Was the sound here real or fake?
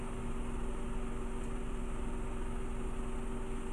real